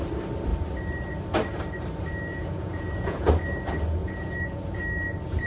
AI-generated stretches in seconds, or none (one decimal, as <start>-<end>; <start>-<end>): 2.3-3.3; 4.0-4.8